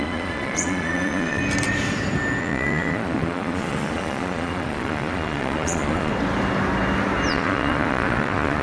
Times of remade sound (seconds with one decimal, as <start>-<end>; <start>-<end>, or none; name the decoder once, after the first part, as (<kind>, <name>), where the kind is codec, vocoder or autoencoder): 0.0-1.4 (vocoder, Vocos); 2.4-6.1; 7.3-8.6